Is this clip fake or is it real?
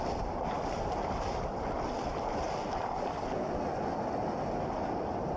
real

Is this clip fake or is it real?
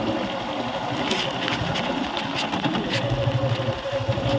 real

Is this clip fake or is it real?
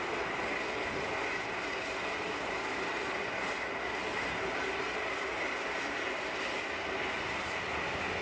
real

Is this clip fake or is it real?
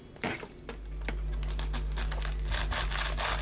real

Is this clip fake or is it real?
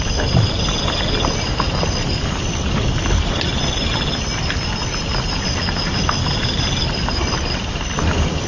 real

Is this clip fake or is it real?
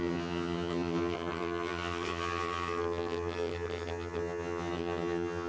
fake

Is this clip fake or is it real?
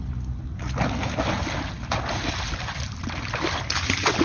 real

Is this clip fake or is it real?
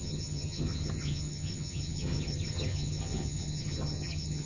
fake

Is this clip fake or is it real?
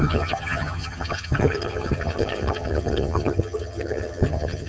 fake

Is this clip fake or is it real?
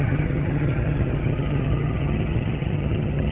fake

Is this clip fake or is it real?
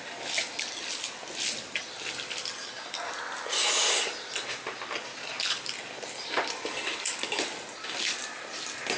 real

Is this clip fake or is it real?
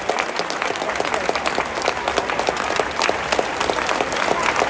real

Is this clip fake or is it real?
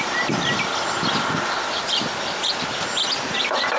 real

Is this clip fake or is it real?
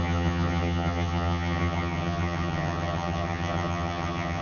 fake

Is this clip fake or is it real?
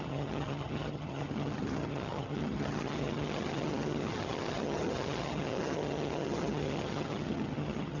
fake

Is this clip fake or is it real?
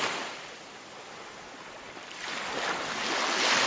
real